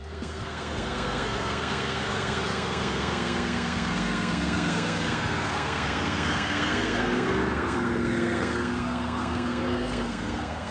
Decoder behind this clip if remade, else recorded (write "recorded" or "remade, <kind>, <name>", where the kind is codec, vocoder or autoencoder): remade, codec, SNAC